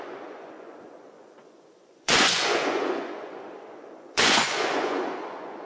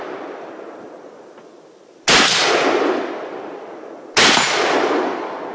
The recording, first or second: second